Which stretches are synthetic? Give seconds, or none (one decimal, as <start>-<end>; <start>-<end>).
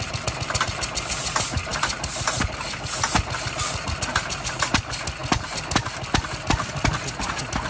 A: none